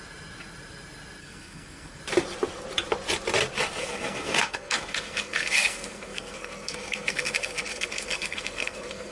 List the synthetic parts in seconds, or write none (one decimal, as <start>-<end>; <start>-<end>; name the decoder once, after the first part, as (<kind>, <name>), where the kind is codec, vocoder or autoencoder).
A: 1.2-2.0 (codec, SNAC); 3.8-9.1

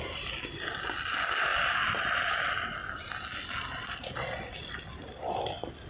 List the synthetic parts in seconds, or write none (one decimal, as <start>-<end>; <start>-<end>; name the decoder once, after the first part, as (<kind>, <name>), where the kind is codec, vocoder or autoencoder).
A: none

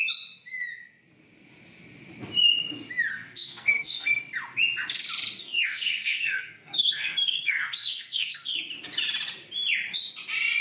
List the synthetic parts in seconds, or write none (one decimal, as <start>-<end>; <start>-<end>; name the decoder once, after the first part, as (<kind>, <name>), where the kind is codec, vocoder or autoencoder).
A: 3.1-4.2 (codec, SNAC); 5.4-8.6

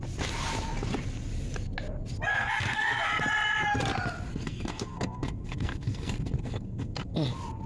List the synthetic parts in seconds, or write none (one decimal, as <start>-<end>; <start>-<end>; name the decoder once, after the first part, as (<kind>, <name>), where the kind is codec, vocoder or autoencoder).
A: 2.3-3.2 (codec, SNAC); 4.3-7.1